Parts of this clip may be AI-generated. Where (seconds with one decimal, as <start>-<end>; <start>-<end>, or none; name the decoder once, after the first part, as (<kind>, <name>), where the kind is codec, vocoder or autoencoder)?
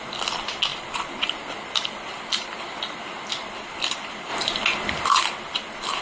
0.7-3.0 (vocoder, BigVGAN v2)